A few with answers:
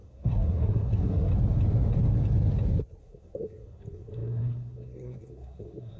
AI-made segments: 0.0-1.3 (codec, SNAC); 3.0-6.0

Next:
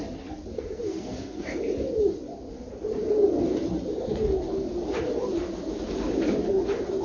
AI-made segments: 0.5-1.6 (codec, SNAC)

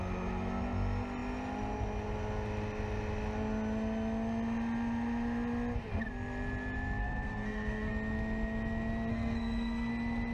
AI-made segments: 7.0-7.9 (codec, SNAC); 9.1-9.9